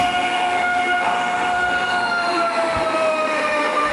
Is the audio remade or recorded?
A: remade